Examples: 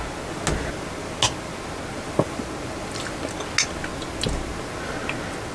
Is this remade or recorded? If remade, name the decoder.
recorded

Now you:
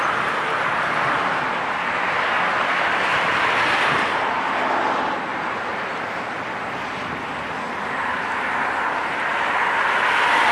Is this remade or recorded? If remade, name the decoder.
recorded